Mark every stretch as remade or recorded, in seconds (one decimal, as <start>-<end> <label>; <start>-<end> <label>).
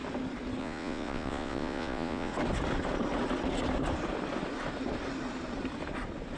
0.0-0.6 recorded; 0.6-2.3 remade; 2.3-6.4 recorded